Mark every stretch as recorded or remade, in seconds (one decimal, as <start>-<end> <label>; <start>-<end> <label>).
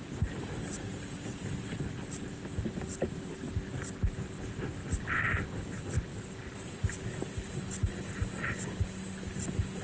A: 0.0-4.8 recorded; 4.8-5.6 remade; 5.6-6.1 recorded; 6.1-7.5 remade; 7.5-9.8 recorded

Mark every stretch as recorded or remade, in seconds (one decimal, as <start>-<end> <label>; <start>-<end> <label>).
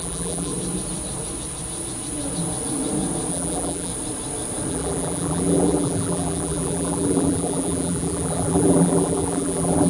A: 0.0-0.5 remade; 0.5-3.3 recorded; 3.3-3.9 remade; 3.9-4.7 recorded; 4.7-9.9 remade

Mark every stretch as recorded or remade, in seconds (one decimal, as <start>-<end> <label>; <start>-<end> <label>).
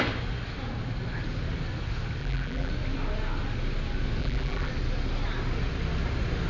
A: 0.0-2.2 recorded; 2.2-2.7 remade; 2.7-4.2 recorded; 4.2-4.7 remade; 4.7-6.5 recorded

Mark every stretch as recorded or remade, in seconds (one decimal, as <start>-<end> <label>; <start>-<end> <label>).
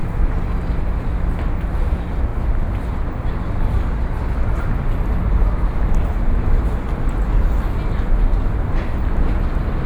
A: 0.0-9.9 recorded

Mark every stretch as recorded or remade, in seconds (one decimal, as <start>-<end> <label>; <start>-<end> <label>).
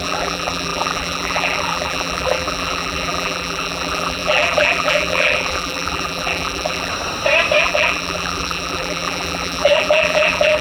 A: 0.0-6.9 remade; 6.9-7.6 recorded; 7.6-10.6 remade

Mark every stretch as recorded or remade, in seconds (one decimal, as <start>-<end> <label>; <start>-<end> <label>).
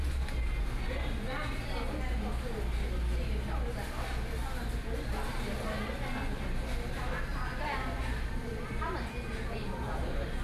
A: 0.0-7.3 recorded; 7.3-8.4 remade; 8.4-10.4 recorded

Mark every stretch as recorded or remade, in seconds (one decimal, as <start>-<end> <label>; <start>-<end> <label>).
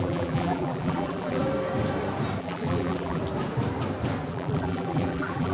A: 0.0-1.4 remade; 1.4-2.4 recorded; 2.4-3.2 remade; 3.2-4.3 recorded; 4.3-5.5 remade